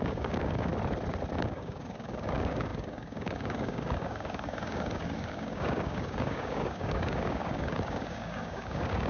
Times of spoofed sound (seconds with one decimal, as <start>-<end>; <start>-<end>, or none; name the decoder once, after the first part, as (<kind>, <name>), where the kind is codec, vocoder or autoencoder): 0.0-0.7 (codec, DAC); 1.3-9.1